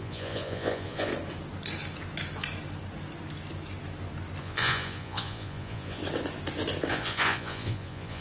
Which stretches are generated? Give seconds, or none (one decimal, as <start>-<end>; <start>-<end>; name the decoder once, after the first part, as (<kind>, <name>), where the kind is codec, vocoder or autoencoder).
0.0-1.1 (vocoder, Vocos); 4.4-6.0; 6.9-8.2

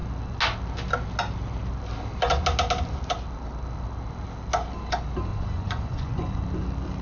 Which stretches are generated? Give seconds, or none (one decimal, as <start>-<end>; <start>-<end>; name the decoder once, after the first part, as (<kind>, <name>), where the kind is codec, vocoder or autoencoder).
5.3-6.4 (vocoder, Vocos)

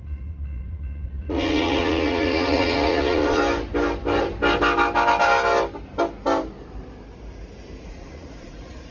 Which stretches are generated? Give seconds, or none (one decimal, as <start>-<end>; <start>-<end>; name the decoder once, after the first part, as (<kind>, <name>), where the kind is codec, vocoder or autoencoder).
0.0-3.4 (vocoder, Vocos); 7.8-8.9

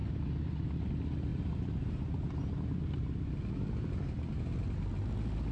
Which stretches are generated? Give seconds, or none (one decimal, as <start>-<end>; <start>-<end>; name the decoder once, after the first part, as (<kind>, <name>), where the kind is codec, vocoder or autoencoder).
none